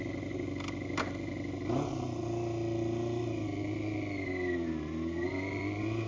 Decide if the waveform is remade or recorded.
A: recorded